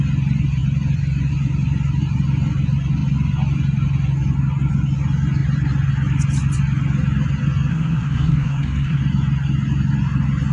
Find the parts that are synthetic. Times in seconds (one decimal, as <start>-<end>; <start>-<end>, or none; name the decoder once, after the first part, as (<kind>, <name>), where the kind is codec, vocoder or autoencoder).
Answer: 7.7-9.0 (codec, SNAC)